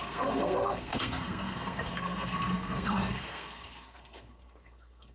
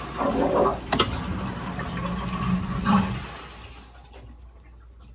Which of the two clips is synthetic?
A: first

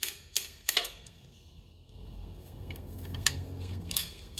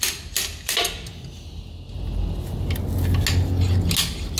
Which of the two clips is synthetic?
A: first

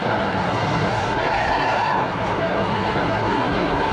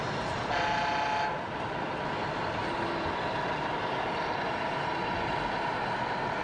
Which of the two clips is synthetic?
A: first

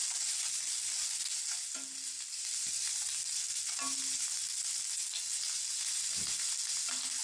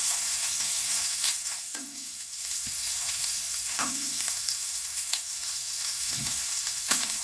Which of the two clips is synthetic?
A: second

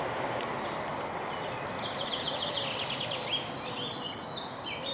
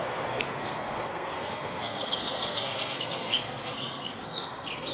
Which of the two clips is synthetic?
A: second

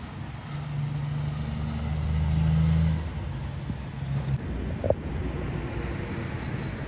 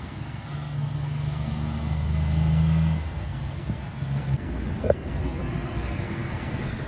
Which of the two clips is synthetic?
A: second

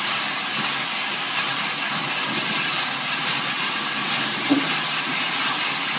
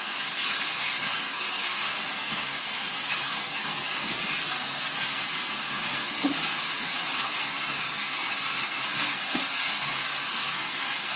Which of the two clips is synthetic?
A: second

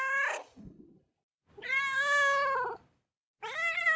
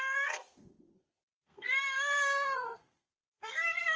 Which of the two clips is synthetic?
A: second